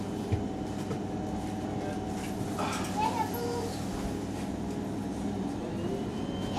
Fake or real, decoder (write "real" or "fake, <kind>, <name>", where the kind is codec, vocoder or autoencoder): real